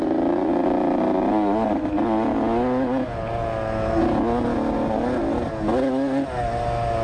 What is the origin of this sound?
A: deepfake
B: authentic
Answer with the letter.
B